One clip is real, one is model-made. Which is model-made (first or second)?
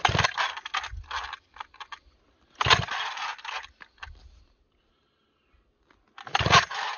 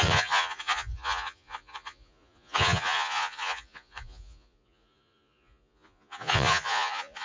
second